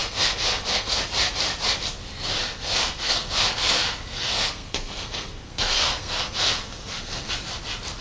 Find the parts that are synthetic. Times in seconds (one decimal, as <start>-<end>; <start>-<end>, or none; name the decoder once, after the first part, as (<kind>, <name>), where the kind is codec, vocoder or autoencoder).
0.0-1.0 (codec, SNAC); 2.5-7.3